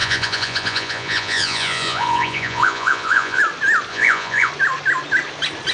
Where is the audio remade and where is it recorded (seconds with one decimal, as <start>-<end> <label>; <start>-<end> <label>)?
0.0-3.4 remade; 3.4-3.9 recorded; 3.9-4.5 remade; 4.5-5.7 recorded

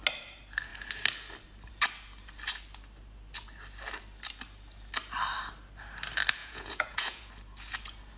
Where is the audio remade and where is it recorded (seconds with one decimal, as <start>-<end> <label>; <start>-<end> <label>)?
0.0-6.4 recorded; 6.4-7.3 remade; 7.3-8.2 recorded

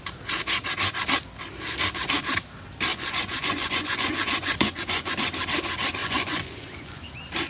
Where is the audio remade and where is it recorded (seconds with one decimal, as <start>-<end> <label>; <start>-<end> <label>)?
0.0-2.9 recorded; 2.9-5.1 remade; 5.1-6.0 recorded; 6.0-7.0 remade; 7.0-7.5 recorded

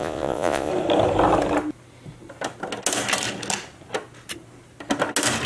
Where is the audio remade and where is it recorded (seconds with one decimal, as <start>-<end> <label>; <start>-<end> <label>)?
0.0-0.7 remade; 0.7-5.5 recorded

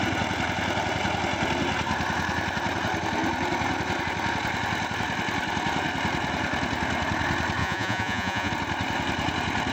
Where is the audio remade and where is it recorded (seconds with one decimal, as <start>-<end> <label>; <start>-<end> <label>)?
0.0-7.6 recorded; 7.6-8.5 remade; 8.5-9.7 recorded

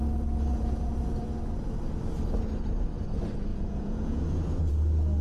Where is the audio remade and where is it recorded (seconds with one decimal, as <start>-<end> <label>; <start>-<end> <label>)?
0.0-0.5 recorded; 0.5-1.2 remade; 1.2-3.5 recorded; 3.5-4.7 remade; 4.7-5.2 recorded

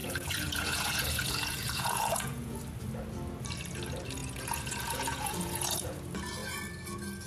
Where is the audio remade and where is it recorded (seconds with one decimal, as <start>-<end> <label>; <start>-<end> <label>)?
0.0-2.6 remade; 2.6-4.2 recorded; 4.2-6.0 remade; 6.0-7.3 recorded

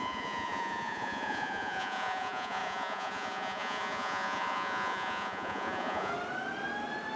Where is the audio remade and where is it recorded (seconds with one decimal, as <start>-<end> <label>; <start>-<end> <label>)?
0.0-6.1 remade; 6.1-7.2 recorded